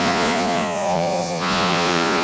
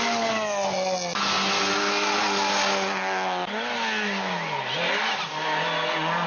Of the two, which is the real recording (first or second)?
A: second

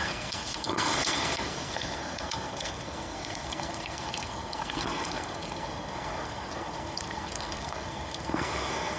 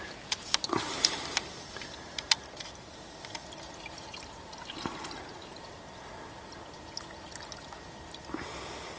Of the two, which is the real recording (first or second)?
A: second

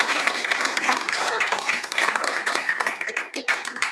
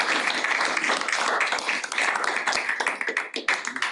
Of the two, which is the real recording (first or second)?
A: second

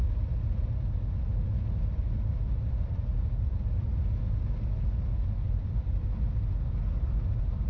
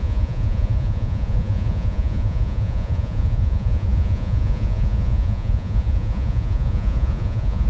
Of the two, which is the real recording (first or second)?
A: first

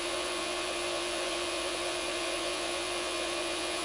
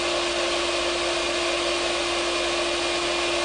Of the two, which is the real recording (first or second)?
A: second